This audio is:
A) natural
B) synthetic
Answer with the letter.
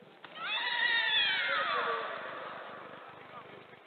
A